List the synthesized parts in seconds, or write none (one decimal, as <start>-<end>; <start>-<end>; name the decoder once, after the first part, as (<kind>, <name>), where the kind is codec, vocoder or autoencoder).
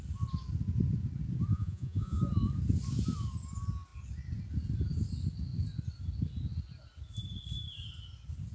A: 1.5-2.2 (vocoder, Vocos)